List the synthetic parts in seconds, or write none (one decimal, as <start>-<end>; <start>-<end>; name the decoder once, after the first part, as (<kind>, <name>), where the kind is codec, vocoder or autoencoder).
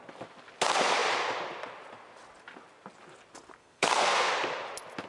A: 3.6-4.3 (codec, SNAC)